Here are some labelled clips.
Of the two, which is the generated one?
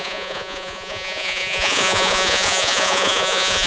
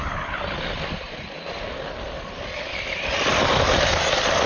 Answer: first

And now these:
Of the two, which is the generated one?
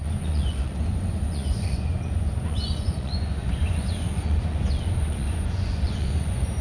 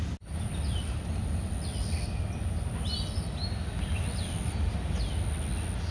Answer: first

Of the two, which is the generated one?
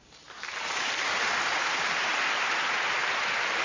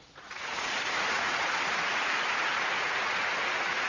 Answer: second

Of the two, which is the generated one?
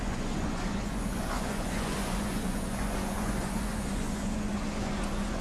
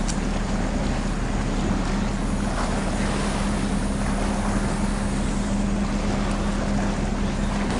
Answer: first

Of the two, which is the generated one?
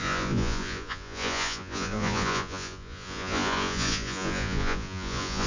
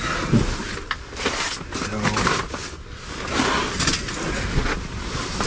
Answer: first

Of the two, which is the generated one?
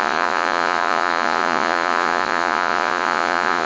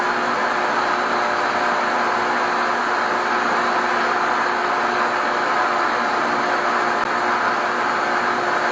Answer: first